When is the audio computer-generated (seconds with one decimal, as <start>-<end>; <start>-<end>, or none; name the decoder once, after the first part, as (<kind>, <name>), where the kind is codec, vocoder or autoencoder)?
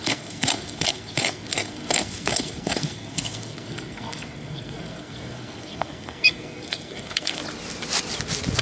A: 0.0-7.4 (codec, SNAC)